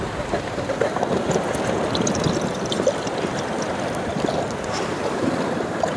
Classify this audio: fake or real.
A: fake